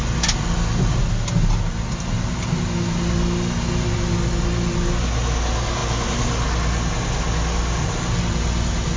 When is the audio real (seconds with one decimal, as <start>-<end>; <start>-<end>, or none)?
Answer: 0.0-9.0